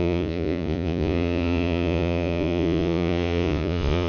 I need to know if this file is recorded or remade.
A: remade